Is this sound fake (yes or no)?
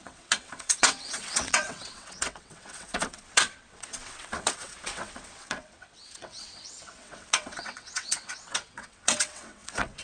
yes